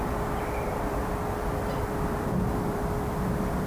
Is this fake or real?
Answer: fake